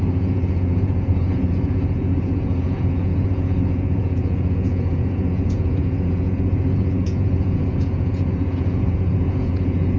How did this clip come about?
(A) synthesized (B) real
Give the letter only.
A